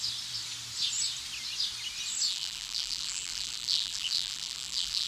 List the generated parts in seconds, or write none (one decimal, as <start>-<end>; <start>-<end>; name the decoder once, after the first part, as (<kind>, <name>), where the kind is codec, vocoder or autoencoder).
2.3-5.1 (vocoder, BigVGAN v2)